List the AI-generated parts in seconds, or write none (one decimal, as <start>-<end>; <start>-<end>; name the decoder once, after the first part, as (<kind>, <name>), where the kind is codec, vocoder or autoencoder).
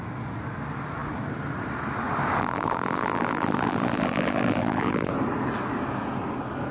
2.4-5.1 (vocoder, BigVGAN v2)